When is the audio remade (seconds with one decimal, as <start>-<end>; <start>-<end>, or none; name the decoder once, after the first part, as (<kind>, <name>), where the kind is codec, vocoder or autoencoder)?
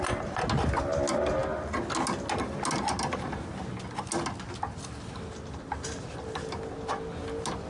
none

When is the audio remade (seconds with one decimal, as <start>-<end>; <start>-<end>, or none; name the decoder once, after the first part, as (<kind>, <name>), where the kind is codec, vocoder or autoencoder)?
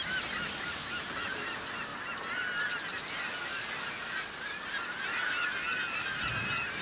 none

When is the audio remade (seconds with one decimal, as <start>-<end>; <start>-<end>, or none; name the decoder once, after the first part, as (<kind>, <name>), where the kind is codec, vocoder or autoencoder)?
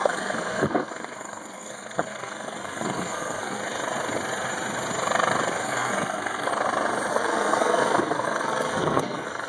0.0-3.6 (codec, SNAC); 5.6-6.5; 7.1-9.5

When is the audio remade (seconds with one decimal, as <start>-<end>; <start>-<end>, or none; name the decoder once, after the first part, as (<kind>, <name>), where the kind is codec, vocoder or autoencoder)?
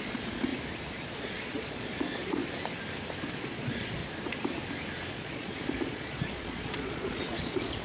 0.0-0.5 (vocoder, Vocos); 1.2-2.4; 3.3-4.0; 5.1-7.8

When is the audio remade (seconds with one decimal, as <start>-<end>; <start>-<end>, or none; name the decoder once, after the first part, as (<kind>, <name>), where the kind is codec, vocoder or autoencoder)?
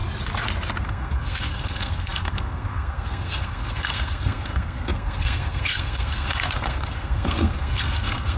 0.8-8.4 (codec, SNAC)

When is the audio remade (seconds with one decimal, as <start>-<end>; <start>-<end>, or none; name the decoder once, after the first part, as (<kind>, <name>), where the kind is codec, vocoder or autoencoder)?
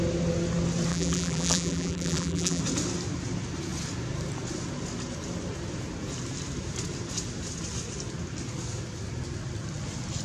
0.9-2.6 (vocoder, BigVGAN v2)